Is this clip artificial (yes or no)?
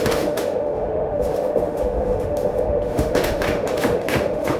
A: yes